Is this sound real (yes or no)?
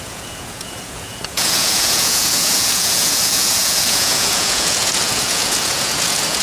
no